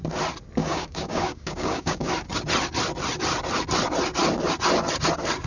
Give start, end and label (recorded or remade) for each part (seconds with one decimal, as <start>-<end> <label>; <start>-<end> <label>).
0.0-0.6 recorded; 0.6-2.1 remade; 2.1-5.5 recorded